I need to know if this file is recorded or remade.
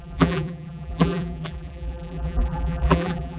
remade